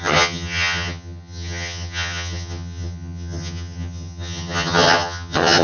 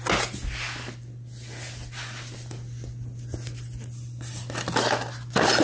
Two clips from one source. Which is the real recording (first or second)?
second